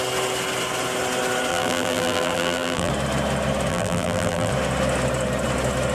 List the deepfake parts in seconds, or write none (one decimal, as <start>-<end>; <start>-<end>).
1.5-2.9; 3.7-4.5